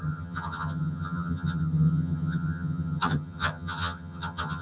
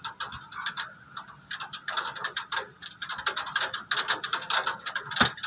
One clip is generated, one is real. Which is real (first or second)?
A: second